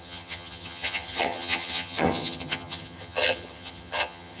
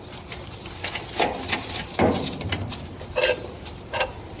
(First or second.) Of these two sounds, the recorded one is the second